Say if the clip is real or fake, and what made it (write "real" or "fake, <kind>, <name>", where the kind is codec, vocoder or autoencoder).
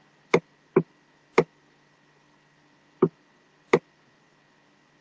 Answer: real